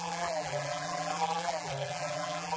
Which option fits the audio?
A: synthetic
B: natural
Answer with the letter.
A